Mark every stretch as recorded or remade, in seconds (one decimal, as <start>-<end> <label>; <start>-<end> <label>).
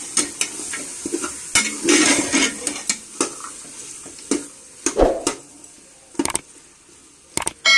0.0-7.8 recorded